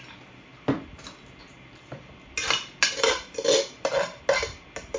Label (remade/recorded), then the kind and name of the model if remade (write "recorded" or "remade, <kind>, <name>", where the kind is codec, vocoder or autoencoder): recorded